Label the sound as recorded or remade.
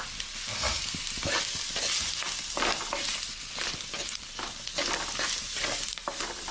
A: recorded